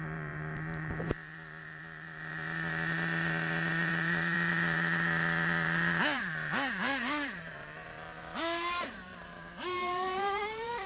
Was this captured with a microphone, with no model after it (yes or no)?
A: no